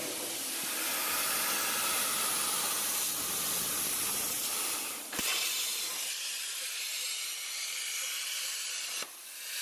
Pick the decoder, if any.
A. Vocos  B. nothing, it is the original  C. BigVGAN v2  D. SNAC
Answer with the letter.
C